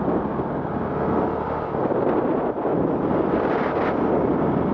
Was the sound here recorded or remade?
recorded